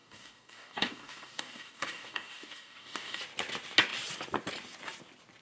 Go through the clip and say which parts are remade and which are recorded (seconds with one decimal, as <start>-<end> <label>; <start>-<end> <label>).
0.0-3.2 remade; 3.2-5.4 recorded